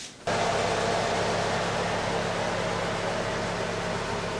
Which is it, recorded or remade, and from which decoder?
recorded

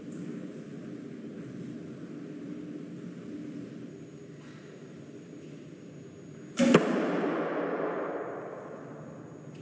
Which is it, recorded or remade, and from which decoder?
recorded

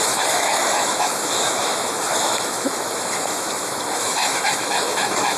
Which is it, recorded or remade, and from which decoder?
remade, autoencoder, DAC-VAE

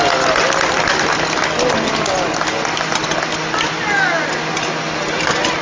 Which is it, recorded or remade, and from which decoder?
recorded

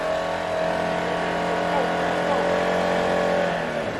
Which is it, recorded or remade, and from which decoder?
recorded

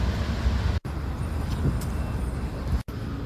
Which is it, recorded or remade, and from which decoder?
recorded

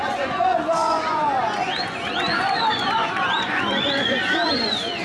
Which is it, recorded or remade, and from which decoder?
remade, vocoder, Vocos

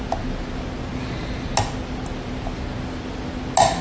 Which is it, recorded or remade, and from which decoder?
recorded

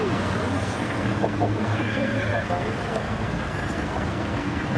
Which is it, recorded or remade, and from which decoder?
remade, codec, SNAC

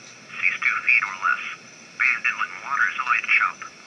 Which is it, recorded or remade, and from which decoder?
recorded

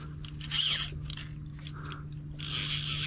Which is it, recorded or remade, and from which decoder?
recorded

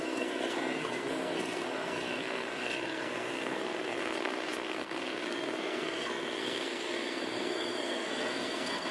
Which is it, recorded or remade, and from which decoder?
remade, codec, SNAC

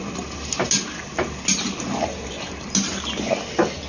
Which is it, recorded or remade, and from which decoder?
recorded